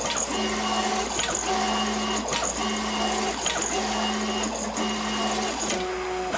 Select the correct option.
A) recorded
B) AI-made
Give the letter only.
A